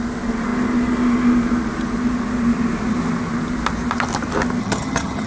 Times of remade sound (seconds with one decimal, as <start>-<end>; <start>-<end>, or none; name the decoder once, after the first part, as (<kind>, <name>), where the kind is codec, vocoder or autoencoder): 4.6-5.3 (vocoder, HiFi-GAN)